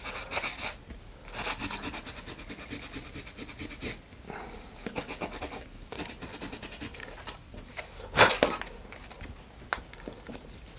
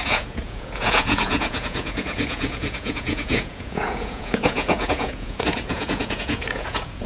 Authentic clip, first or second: first